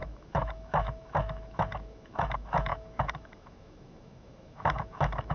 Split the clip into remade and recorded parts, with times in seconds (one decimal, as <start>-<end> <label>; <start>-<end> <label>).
0.0-5.3 remade